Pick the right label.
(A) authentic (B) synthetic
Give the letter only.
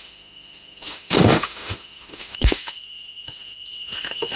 B